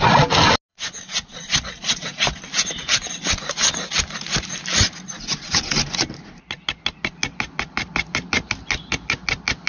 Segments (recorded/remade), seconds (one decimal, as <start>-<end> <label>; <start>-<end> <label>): 0.0-0.7 recorded; 0.7-2.4 remade; 2.4-9.7 recorded